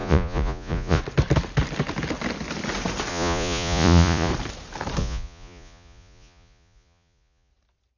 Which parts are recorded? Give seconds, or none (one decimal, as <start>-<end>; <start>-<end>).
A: 1.0-3.1; 4.3-5.0; 7.5-8.0